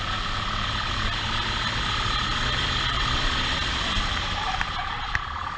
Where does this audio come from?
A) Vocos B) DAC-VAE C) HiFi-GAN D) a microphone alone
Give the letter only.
D